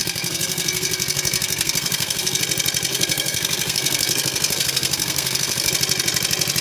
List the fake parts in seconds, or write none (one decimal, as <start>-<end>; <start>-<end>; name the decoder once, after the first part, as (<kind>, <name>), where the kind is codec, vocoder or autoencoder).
0.0-2.4 (codec, SNAC); 2.9-5.7